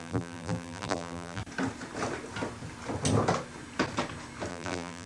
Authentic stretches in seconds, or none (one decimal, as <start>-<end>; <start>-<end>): 1.4-4.5